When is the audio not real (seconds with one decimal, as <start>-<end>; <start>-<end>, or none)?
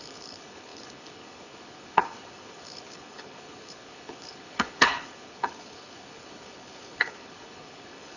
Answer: 0.0-8.2